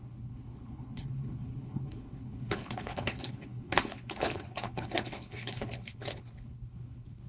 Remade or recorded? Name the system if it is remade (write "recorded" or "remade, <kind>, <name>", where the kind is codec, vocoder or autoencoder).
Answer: remade, codec, HILCodec